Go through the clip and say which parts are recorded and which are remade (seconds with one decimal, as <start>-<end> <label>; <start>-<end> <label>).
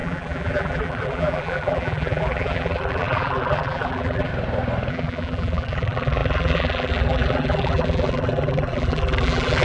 0.0-4.3 remade; 4.3-4.9 recorded; 4.9-9.6 remade